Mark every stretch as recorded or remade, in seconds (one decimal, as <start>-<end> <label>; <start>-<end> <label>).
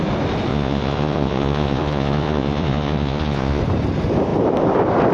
0.0-0.5 recorded; 0.5-3.6 remade; 3.6-5.1 recorded